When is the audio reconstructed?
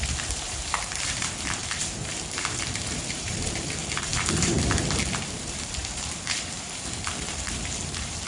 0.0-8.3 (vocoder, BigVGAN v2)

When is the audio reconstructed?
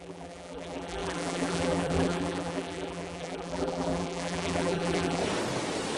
0.0-5.2 (vocoder, BigVGAN v2)